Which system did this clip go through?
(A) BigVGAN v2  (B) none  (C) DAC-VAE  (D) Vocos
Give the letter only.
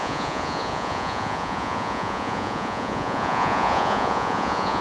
D